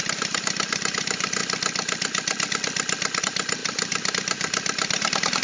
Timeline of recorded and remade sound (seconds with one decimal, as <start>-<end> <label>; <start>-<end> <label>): 0.0-1.4 remade; 1.4-3.2 recorded; 3.2-5.4 remade